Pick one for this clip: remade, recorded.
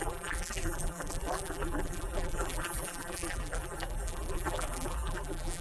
remade